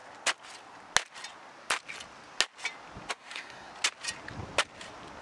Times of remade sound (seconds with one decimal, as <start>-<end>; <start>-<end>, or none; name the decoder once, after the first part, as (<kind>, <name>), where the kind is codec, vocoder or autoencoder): 3.1-3.7 (codec, SNAC)